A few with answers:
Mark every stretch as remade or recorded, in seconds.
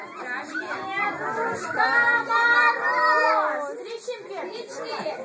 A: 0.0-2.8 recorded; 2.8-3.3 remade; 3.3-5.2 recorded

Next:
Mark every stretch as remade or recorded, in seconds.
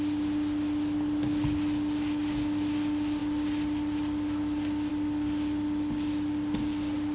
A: 0.0-7.1 recorded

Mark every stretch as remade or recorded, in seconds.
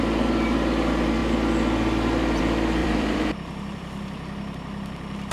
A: 0.0-2.8 recorded; 2.8-5.3 remade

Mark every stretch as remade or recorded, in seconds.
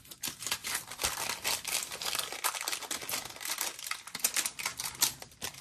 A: 0.0-0.6 recorded; 0.6-1.3 remade; 1.3-3.0 recorded; 3.0-3.7 remade; 3.7-4.7 recorded; 4.7-5.6 remade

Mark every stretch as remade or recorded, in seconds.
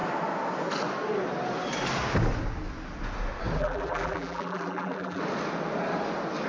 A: 0.0-3.6 recorded; 3.6-5.2 remade; 5.2-6.5 recorded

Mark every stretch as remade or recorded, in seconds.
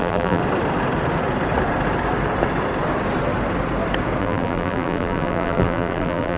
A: 0.0-0.4 remade; 0.4-4.2 recorded; 4.2-6.4 remade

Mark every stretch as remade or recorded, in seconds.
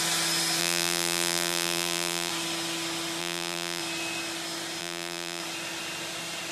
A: 0.0-0.6 recorded; 0.6-2.3 remade; 2.3-3.2 recorded; 3.2-3.8 remade; 3.8-4.8 recorded; 4.8-5.4 remade; 5.4-6.5 recorded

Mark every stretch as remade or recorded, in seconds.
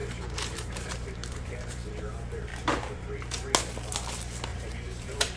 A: 0.0-1.9 remade; 1.9-2.5 recorded; 2.5-3.1 remade; 3.1-4.5 recorded; 4.5-5.4 remade